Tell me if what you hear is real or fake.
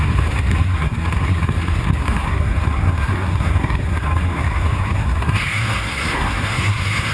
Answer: fake